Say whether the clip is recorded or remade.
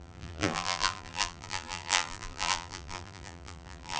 remade